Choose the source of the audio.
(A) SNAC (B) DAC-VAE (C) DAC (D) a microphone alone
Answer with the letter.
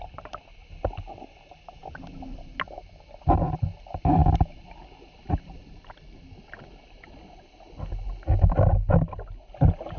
D